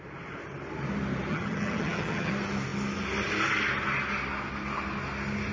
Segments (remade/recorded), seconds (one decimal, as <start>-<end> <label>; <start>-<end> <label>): 0.0-1.3 recorded; 1.3-2.3 remade; 2.3-5.5 recorded